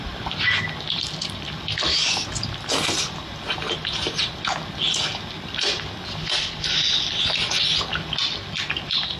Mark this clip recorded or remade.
recorded